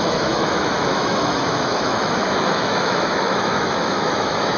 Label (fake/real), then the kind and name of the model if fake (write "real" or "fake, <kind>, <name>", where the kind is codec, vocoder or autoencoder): fake, autoencoder, DAC-VAE